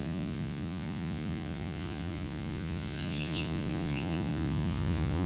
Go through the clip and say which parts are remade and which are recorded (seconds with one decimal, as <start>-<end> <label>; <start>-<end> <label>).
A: 0.0-5.3 remade